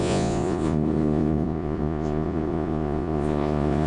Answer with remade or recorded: remade